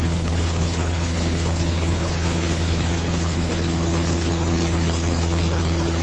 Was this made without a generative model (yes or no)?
no